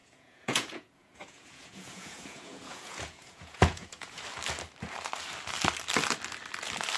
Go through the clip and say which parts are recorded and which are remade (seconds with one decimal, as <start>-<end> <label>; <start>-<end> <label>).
0.0-4.2 remade; 4.2-7.0 recorded